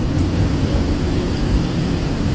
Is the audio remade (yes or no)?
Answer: no